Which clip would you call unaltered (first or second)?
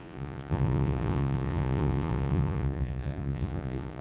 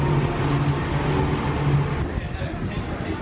second